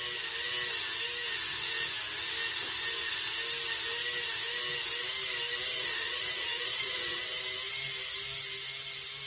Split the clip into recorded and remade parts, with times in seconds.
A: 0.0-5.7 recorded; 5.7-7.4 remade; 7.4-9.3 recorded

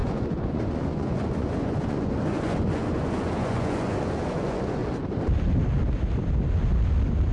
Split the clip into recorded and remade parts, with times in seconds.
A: 0.0-4.8 remade; 4.8-7.3 recorded

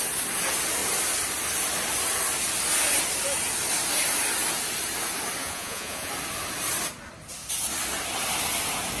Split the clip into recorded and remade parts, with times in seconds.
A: 0.0-5.4 recorded; 5.4-6.1 remade; 6.1-9.0 recorded

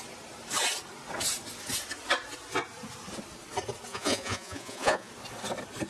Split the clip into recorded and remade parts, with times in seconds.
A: 0.0-3.9 recorded; 3.9-5.1 remade; 5.1-5.9 recorded

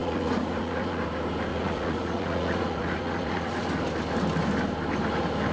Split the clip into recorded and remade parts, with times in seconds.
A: 0.0-1.0 remade; 1.0-1.5 recorded; 1.5-3.7 remade; 3.7-5.5 recorded

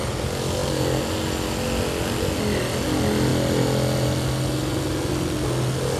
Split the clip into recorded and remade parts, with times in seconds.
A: 0.0-6.0 recorded

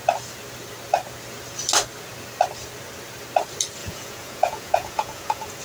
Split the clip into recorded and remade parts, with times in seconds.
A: 0.0-3.8 recorded; 3.8-5.6 remade